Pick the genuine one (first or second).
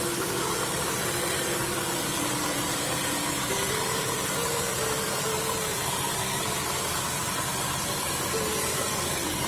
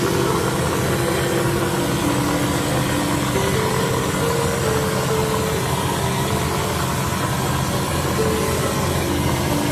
second